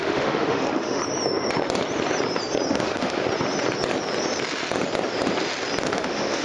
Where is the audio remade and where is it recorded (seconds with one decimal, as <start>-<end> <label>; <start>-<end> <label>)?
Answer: 0.0-1.0 remade; 1.0-2.7 recorded; 2.7-3.2 remade; 3.2-5.8 recorded; 5.8-6.4 remade